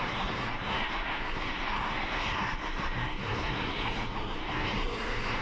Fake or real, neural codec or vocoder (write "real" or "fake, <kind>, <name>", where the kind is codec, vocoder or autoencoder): fake, codec, SNAC